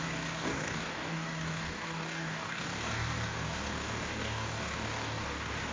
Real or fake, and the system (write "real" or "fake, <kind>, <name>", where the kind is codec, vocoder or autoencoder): fake, codec, DAC